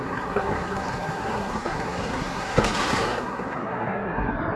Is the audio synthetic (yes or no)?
yes